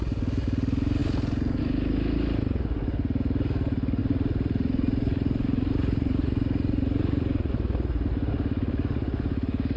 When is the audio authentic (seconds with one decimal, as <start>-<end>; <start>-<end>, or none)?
0.0-4.0; 7.5-9.8